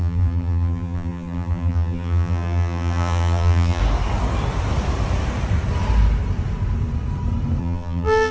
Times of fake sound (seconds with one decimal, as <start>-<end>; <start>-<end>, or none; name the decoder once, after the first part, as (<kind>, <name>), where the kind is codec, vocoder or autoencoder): 0.0-3.8 (vocoder, BigVGAN v2); 7.6-8.3